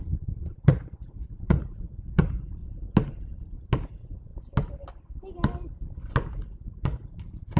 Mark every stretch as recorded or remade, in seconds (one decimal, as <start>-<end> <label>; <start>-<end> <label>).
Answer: 0.0-2.6 remade; 2.6-3.9 recorded; 3.9-4.3 remade; 4.3-6.7 recorded; 6.7-7.6 remade

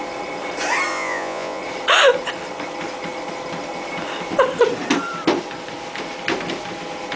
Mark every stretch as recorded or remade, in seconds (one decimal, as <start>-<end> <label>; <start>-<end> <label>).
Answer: 0.0-0.9 recorded; 0.9-1.6 remade; 1.6-7.2 recorded

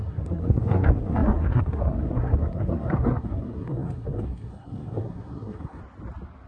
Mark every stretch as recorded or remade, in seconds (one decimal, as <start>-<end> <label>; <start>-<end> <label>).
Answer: 0.0-5.8 remade; 5.8-6.5 recorded

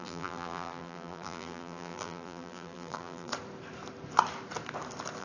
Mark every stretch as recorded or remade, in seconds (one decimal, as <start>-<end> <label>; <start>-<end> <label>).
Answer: 0.0-3.3 remade; 3.3-5.2 recorded